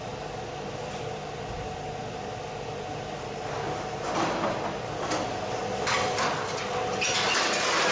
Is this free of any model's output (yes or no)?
yes